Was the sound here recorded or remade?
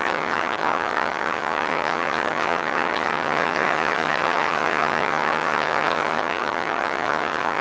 remade